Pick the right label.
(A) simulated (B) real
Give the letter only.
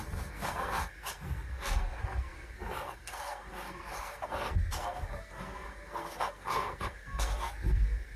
A